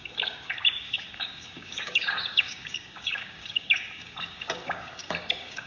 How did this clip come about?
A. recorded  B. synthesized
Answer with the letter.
B